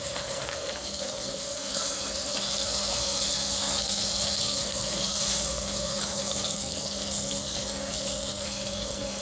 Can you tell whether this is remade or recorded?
remade